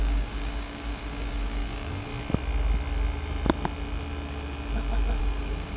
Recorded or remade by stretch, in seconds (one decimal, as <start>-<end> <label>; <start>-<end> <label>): 0.0-2.1 remade; 2.1-5.2 recorded; 5.2-5.8 remade